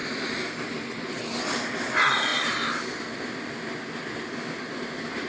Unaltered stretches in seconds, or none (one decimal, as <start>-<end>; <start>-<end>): 0.0-5.3